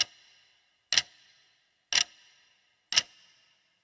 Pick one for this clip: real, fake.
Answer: real